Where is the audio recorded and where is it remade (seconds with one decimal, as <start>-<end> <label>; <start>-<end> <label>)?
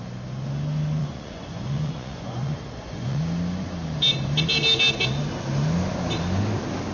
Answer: 0.0-1.0 recorded; 1.0-3.2 remade; 3.2-6.9 recorded